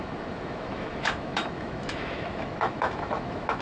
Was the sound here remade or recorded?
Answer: remade